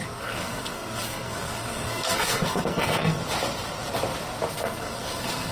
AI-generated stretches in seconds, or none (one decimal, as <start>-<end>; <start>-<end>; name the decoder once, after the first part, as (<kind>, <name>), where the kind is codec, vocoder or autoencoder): 0.0-3.2 (codec, SNAC); 4.5-5.5